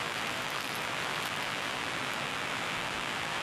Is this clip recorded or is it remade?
remade